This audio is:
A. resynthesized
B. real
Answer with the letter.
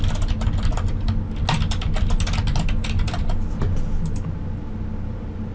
B